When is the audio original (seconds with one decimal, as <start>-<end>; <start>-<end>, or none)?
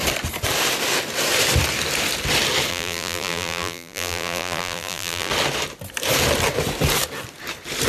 0.0-2.7; 5.3-7.9